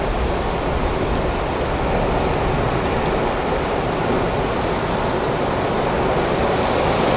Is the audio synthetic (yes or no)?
no